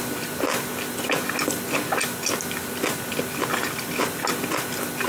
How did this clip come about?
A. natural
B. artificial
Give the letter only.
A